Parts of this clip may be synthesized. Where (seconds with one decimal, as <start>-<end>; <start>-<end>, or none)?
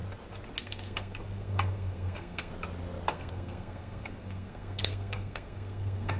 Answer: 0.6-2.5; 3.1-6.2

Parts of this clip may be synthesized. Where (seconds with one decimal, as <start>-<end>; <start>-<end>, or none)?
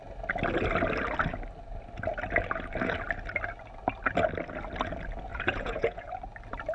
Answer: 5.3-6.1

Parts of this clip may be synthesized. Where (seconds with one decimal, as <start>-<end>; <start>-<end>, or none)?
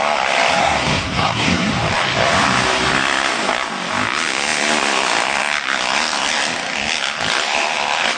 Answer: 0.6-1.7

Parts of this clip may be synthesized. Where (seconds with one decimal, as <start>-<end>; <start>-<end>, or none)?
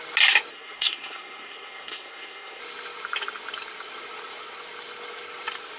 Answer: 0.5-2.6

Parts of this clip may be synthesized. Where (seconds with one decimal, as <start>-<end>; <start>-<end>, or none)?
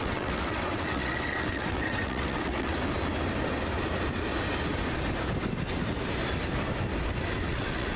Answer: 0.0-2.7; 7.5-8.0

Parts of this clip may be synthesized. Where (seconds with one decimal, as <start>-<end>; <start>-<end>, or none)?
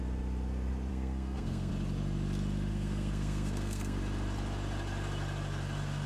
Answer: 0.9-1.7; 2.7-4.0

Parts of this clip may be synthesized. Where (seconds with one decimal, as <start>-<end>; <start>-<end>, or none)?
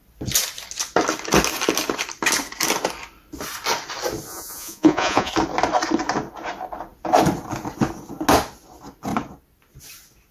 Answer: 4.3-5.3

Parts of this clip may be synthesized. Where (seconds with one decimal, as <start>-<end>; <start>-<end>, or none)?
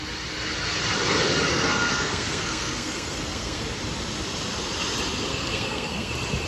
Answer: 1.5-3.6; 5.3-6.1